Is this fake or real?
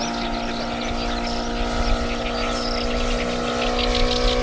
real